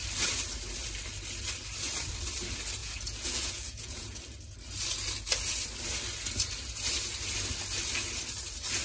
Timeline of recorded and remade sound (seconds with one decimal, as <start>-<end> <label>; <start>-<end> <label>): 0.0-2.8 recorded; 2.8-4.2 remade; 4.2-8.8 recorded